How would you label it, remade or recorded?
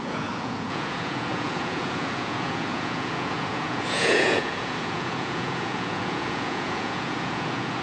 remade